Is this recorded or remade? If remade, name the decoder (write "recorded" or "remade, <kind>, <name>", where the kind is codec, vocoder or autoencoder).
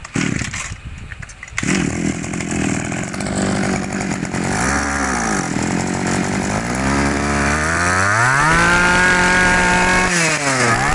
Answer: recorded